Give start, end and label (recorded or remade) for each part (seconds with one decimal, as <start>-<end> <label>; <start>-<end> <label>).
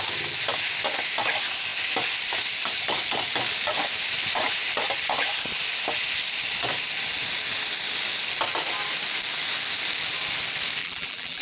0.0-10.8 recorded; 10.8-11.4 remade